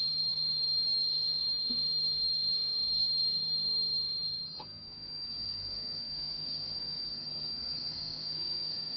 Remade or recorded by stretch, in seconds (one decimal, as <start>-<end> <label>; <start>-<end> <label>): 0.0-9.0 remade